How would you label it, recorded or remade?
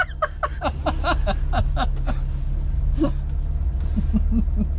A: recorded